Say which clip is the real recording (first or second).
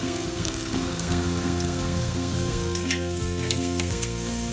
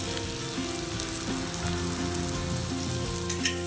second